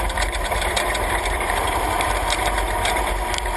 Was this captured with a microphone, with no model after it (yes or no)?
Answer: no